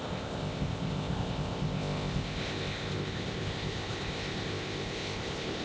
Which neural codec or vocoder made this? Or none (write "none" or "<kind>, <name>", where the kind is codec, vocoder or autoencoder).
codec, ZipCodec